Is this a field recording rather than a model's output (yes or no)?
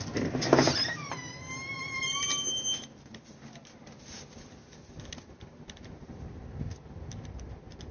yes